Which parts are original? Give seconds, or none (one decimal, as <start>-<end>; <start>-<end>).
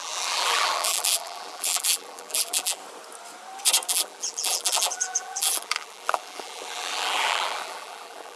2.8-3.9